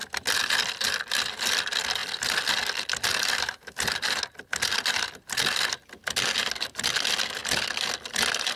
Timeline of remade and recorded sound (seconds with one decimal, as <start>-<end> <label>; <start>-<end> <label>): 0.0-8.6 recorded